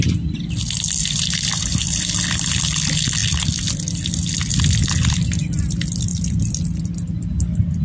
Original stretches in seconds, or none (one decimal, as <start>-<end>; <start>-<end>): 0.0-1.0; 2.6-6.1; 6.8-7.8